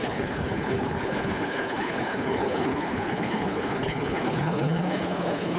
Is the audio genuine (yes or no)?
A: no